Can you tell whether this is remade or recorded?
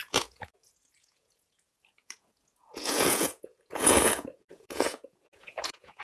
remade